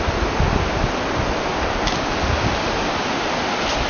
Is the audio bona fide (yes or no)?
yes